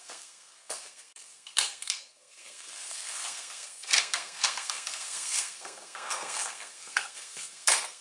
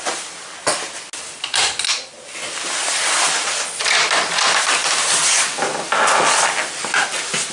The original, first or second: second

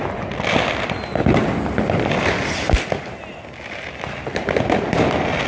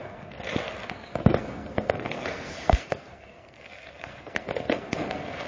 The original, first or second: first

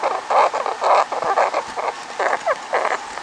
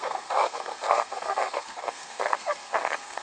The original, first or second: first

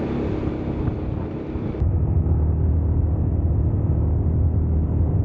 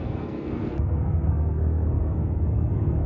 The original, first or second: first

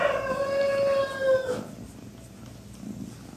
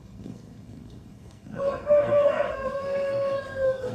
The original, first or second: first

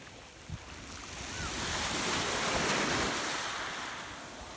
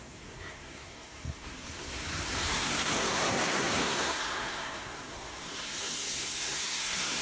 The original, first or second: first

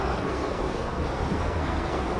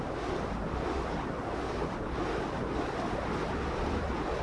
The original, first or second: second